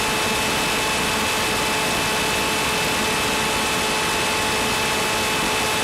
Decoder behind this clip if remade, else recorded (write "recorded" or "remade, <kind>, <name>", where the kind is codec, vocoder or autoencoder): recorded